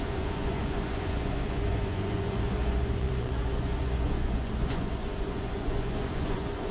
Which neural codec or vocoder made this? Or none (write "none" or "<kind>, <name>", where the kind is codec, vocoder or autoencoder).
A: vocoder, Vocos